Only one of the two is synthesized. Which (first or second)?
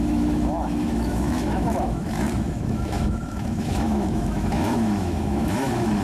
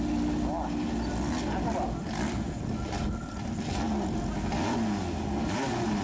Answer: first